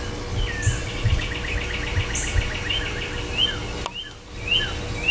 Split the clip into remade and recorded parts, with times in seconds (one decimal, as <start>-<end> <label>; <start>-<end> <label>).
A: 0.0-0.8 recorded; 0.8-1.3 remade; 1.3-5.1 recorded